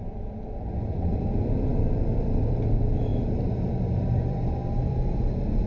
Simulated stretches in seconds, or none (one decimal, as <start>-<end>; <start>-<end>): 0.0-3.1; 3.8-5.7

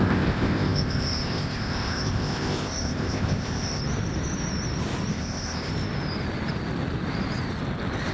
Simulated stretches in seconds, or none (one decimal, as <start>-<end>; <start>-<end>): 0.0-3.8; 5.1-5.7

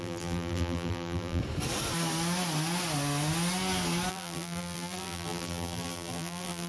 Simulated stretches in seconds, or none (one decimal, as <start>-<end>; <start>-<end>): 0.0-1.4; 4.1-6.7

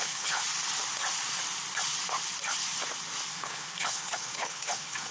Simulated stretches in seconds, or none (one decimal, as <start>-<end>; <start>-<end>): 0.0-0.4; 3.3-5.1

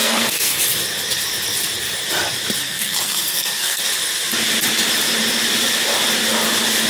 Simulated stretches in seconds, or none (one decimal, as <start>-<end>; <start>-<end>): 0.0-0.6; 2.6-3.8

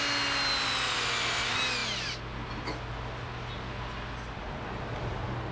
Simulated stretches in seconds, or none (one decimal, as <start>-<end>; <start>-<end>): none